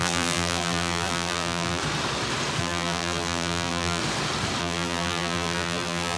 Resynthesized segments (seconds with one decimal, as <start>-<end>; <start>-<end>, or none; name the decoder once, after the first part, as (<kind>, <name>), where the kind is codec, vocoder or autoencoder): 0.0-1.8 (vocoder, BigVGAN v2); 2.6-4.0; 4.6-6.2